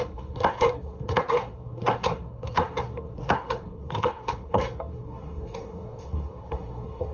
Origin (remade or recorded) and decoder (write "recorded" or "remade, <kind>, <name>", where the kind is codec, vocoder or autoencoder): remade, codec, SNAC